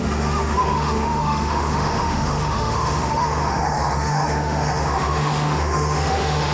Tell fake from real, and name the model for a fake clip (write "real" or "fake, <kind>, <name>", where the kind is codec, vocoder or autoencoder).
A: fake, autoencoder, DAC-VAE